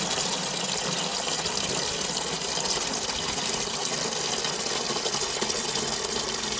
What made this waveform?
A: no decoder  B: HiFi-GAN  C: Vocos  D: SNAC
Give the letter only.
A